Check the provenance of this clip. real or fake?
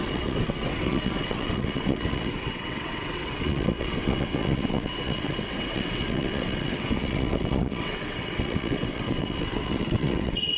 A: fake